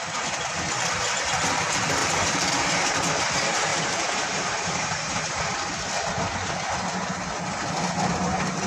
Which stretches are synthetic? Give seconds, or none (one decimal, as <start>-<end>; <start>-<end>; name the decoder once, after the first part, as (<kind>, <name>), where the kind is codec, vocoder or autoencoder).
3.7-5.4 (vocoder, BigVGAN v2)